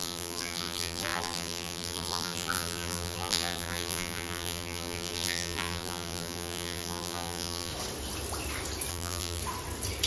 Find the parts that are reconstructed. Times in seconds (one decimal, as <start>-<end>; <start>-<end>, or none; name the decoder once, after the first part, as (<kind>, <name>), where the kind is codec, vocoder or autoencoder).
0.0-7.7 (vocoder, BigVGAN v2); 8.9-9.4